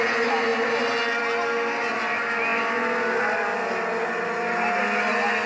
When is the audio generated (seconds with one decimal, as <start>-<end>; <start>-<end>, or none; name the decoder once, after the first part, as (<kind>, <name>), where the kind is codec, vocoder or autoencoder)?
none